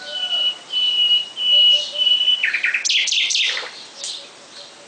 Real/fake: fake